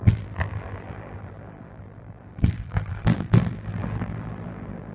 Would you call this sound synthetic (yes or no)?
yes